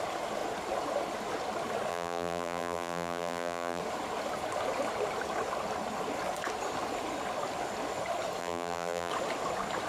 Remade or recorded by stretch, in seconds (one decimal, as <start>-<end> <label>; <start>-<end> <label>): 0.0-1.9 recorded; 1.9-3.8 remade; 3.8-8.4 recorded; 8.4-9.1 remade; 9.1-9.9 recorded